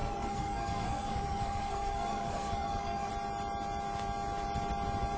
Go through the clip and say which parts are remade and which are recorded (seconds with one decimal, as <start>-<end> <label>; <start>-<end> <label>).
0.0-3.1 remade; 3.1-5.2 recorded